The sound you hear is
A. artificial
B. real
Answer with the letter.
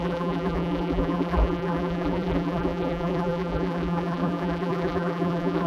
A